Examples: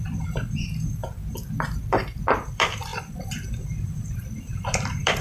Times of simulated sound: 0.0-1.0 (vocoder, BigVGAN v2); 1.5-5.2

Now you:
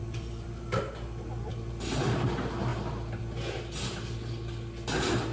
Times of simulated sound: 0.0-0.8 (vocoder, BigVGAN v2); 1.5-2.0

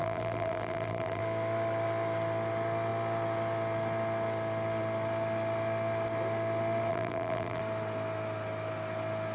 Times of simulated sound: 0.0-1.2 (vocoder, BigVGAN v2); 6.9-7.6

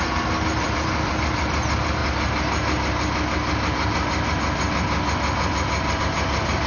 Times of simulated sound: 0.0-2.0 (vocoder, BigVGAN v2); 6.0-6.7